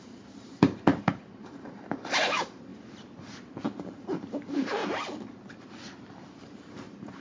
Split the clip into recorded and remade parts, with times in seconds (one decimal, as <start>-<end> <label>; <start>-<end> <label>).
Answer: 0.0-2.7 remade; 2.7-3.8 recorded; 3.8-4.8 remade; 4.8-6.4 recorded; 6.4-7.2 remade